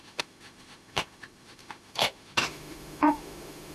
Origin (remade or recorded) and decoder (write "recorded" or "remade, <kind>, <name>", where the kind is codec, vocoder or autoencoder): remade, autoencoder, DAC-VAE